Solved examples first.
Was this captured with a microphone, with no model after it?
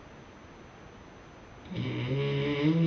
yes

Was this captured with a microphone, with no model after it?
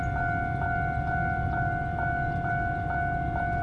yes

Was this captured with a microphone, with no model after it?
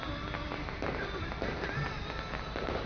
yes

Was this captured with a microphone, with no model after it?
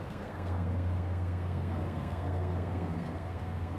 no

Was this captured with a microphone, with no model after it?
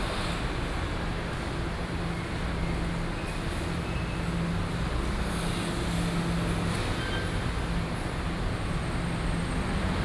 yes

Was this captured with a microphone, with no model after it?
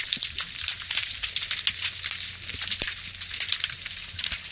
yes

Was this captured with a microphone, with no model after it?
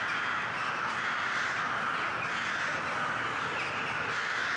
yes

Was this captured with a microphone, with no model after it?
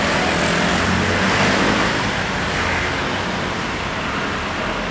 yes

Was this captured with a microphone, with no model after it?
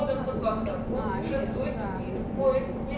yes